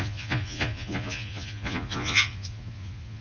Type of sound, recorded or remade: remade